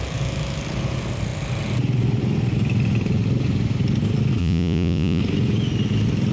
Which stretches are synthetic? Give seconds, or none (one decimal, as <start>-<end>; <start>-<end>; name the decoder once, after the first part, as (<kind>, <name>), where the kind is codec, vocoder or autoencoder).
4.4-5.2 (vocoder, Vocos)